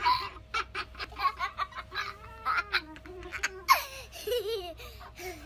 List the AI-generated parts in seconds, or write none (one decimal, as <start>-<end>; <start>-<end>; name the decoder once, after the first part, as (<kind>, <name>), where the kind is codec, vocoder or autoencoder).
none